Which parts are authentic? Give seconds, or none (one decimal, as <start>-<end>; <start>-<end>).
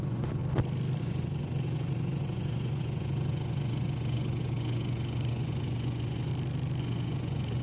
0.4-1.0; 6.3-6.8